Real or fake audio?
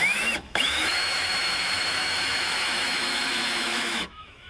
fake